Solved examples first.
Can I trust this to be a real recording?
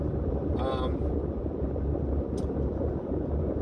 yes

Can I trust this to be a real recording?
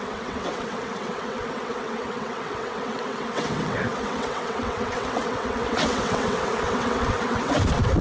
no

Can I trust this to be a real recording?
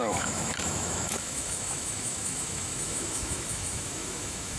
no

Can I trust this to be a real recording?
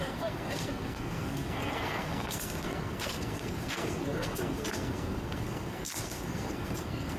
no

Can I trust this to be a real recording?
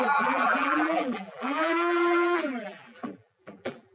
no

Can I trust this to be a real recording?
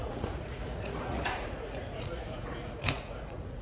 no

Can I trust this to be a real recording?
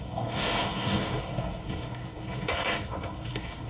no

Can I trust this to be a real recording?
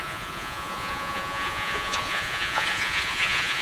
no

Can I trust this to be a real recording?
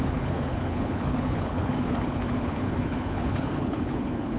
no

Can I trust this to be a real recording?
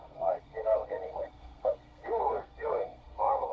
no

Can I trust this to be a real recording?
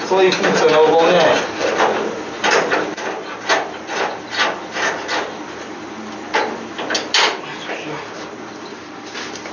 yes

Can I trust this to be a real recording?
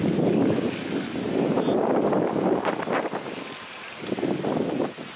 yes